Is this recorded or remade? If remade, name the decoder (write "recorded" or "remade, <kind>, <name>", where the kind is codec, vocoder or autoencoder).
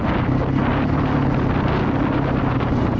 recorded